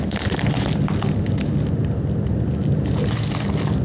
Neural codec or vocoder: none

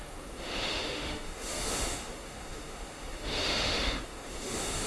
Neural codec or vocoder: autoencoder, DAC-VAE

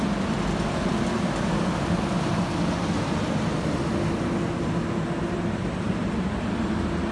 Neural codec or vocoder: none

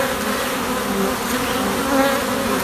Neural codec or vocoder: none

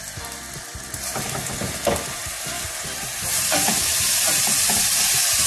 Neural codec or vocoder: none